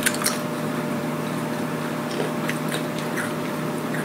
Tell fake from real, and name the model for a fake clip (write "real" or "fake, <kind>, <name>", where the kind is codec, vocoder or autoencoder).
fake, vocoder, BigVGAN v2